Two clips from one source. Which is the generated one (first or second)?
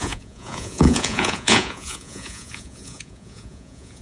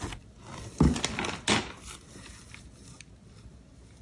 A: first